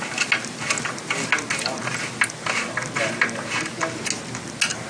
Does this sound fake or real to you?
real